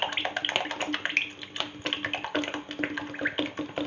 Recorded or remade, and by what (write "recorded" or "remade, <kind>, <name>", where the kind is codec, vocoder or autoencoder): recorded